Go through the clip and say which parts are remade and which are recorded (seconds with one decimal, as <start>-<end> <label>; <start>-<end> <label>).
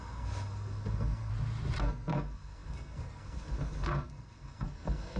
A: 0.0-1.3 remade; 1.3-1.8 recorded; 1.8-5.2 remade